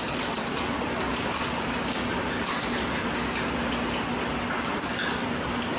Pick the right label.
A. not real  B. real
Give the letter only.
B